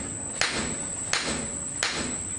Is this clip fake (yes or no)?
no